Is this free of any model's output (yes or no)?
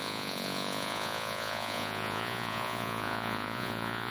no